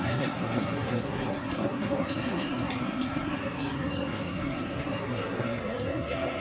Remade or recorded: remade